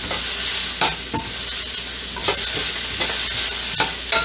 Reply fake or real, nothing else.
real